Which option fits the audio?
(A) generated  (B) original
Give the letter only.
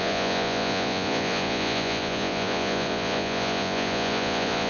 A